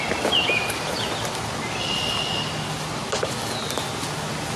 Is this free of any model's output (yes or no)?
yes